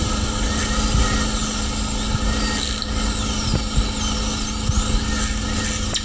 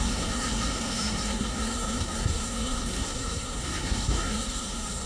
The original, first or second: first